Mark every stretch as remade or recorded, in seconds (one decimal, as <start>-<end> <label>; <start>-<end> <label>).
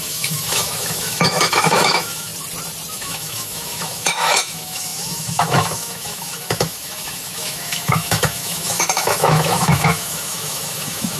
0.0-2.3 remade; 2.3-2.9 recorded; 2.9-11.2 remade